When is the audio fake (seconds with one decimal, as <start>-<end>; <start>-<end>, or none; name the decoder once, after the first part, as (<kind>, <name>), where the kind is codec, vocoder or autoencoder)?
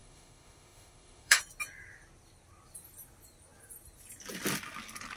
0.0-1.4 (autoencoder, DAC-VAE)